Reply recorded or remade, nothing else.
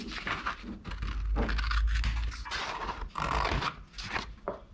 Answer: recorded